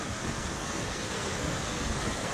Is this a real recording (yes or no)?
no